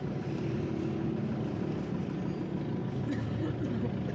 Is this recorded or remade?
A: recorded